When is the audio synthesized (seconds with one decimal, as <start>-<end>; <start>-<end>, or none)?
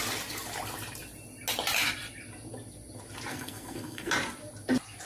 3.3-4.1